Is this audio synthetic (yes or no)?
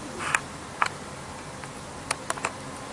yes